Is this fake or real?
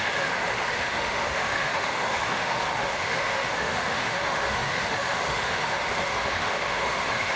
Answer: fake